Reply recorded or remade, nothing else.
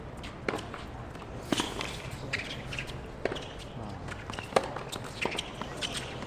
recorded